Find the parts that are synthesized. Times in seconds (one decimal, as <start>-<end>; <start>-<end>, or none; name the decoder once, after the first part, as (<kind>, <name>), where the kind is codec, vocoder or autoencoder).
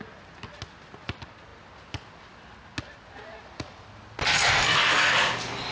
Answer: none